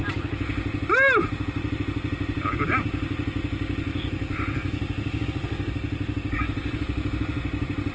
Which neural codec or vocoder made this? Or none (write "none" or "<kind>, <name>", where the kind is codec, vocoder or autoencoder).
none